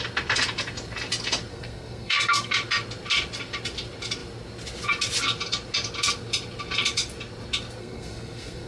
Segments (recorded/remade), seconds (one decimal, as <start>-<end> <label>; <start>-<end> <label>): 0.0-1.5 recorded; 1.5-2.5 remade; 2.5-7.8 recorded; 7.8-8.7 remade